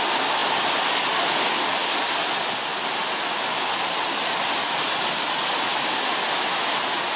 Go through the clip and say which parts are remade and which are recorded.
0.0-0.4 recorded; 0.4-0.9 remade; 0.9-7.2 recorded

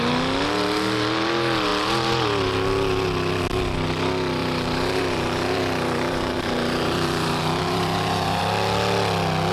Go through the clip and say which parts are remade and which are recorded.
0.0-4.4 recorded; 4.4-8.4 remade; 8.4-9.5 recorded

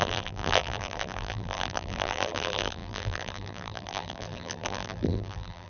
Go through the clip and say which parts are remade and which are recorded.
0.0-5.7 remade

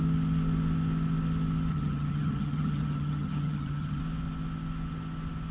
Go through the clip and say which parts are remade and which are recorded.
0.0-1.7 recorded; 1.7-4.0 remade; 4.0-5.5 recorded